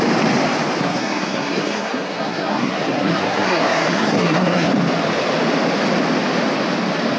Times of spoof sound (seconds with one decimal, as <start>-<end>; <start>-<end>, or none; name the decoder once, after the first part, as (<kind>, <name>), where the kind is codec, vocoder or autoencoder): 0.8-4.7 (codec, SNAC)